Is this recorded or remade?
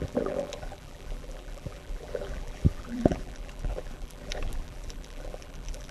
remade